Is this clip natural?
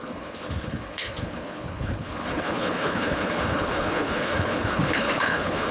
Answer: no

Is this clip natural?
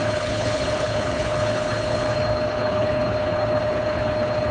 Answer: no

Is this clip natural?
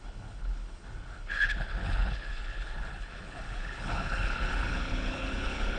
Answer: no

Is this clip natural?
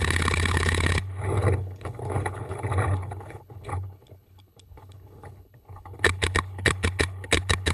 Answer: no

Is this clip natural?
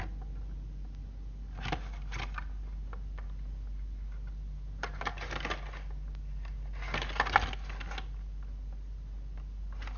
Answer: yes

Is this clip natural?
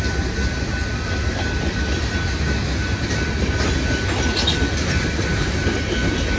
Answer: yes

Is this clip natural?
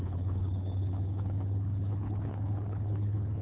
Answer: no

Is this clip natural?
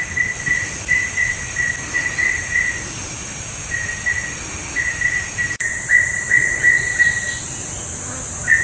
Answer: yes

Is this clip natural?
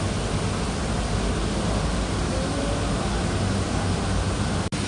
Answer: yes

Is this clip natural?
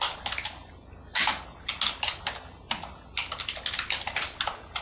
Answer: yes